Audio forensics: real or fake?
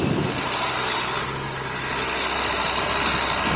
real